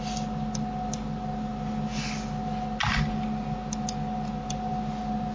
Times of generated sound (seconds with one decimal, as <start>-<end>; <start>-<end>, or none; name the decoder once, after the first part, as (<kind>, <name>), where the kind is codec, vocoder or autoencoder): none